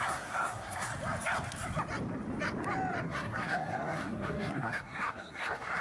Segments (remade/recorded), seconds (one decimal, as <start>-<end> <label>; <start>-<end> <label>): 0.0-0.9 remade; 0.9-3.0 recorded; 3.0-5.8 remade